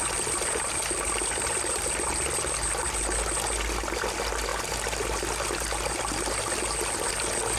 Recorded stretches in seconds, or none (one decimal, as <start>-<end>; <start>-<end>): 0.0-7.6